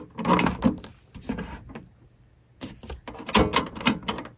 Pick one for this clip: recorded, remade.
recorded